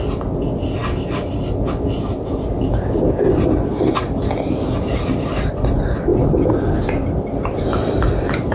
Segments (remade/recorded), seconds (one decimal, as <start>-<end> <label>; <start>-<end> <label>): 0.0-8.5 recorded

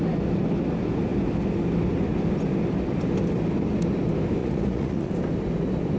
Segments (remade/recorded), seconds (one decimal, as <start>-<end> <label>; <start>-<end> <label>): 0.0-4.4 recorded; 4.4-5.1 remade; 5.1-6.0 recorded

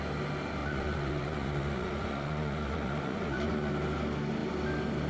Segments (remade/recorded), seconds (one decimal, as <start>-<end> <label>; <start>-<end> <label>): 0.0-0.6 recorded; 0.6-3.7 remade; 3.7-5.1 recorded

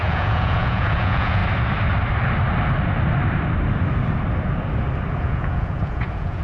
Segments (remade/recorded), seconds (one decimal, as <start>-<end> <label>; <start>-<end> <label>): 0.0-1.4 remade; 1.4-5.2 recorded; 5.2-6.4 remade

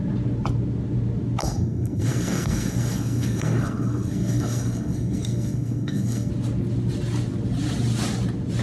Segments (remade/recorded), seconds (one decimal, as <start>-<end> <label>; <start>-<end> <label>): 0.0-1.4 recorded; 1.4-6.3 remade; 6.3-8.6 recorded

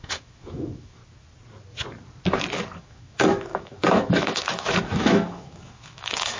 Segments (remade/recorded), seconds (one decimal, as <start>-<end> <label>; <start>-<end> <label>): 0.0-1.0 remade; 1.0-2.8 recorded; 2.8-6.4 remade